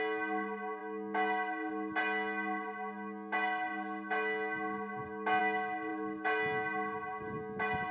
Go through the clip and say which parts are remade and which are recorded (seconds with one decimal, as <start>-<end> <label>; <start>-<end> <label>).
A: 0.0-7.9 recorded

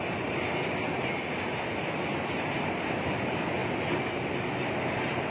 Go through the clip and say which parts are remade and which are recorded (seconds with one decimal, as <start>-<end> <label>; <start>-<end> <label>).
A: 0.0-5.3 recorded

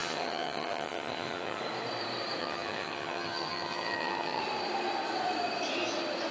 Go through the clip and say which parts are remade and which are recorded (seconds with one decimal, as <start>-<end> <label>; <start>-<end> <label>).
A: 0.0-1.6 remade; 1.6-2.4 recorded; 2.4-4.4 remade; 4.4-6.3 recorded

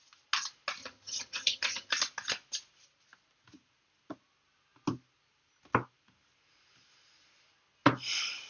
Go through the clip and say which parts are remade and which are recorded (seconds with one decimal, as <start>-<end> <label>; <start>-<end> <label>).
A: 0.0-0.8 recorded; 0.8-1.9 remade; 1.9-8.5 recorded

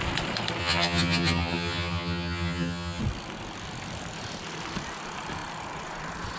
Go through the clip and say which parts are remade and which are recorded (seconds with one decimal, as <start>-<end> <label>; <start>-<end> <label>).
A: 0.0-0.6 recorded; 0.6-3.0 remade; 3.0-6.4 recorded

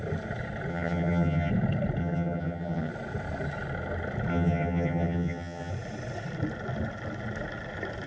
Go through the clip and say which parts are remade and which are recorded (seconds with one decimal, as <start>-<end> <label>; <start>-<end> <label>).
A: 0.0-0.7 recorded; 0.7-1.5 remade; 1.5-2.0 recorded; 2.0-2.9 remade; 2.9-4.3 recorded; 4.3-5.7 remade; 5.7-8.1 recorded